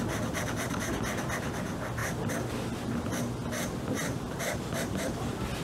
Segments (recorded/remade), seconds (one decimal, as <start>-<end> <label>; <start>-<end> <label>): 0.0-2.0 recorded; 2.0-5.6 remade